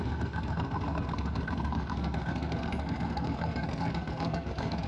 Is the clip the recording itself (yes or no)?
no